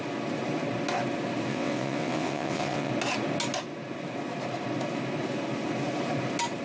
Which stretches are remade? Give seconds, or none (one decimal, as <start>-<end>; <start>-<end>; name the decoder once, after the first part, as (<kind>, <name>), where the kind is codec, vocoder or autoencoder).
1.5-2.9 (vocoder, WaveNeXt)